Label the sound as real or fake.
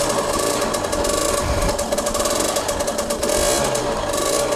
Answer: real